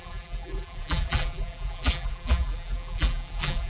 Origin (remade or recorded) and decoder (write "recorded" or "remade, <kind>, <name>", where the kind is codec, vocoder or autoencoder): remade, vocoder, BigVGAN v2